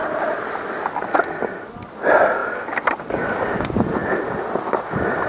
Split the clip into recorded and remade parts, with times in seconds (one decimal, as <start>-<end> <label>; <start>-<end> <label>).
0.0-0.7 remade; 0.7-4.0 recorded; 4.0-5.3 remade